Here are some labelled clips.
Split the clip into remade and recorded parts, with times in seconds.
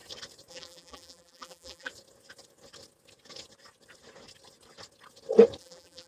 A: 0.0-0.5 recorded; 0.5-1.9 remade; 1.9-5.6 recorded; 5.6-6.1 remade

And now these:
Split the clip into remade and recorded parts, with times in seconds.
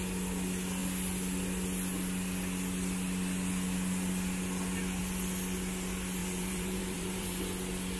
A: 0.0-6.2 recorded; 6.2-7.4 remade; 7.4-8.0 recorded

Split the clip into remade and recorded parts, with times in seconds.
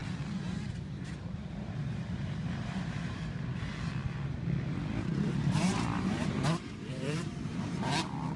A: 0.0-3.7 remade; 3.7-5.1 recorded; 5.1-7.8 remade; 7.8-8.4 recorded